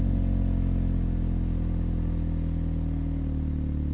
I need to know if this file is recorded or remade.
recorded